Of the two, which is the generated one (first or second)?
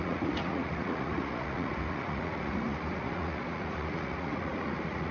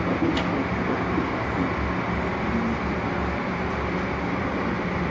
first